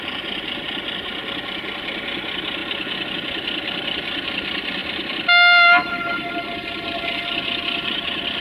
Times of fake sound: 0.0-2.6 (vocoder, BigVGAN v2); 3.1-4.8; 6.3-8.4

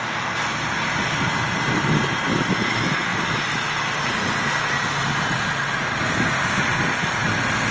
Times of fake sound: none